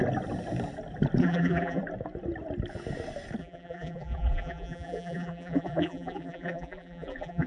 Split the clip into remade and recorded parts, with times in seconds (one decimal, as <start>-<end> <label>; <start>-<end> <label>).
0.0-1.2 recorded; 1.2-1.8 remade; 1.8-3.4 recorded; 3.4-7.5 remade